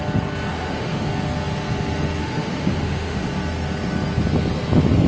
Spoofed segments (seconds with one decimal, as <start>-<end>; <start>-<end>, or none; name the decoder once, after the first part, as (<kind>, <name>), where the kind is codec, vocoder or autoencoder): 0.5-1.1 (autoencoder, DAC-VAE); 2.2-3.3